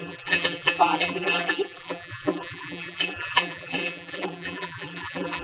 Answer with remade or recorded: remade